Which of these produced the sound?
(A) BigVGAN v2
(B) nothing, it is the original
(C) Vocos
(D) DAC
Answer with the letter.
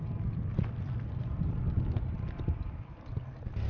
B